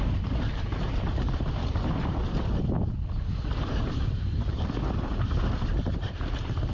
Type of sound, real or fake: fake